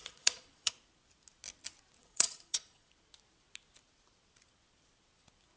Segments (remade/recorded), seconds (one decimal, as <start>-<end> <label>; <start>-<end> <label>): 0.0-0.7 remade; 0.7-2.0 recorded; 2.0-2.9 remade; 2.9-5.6 recorded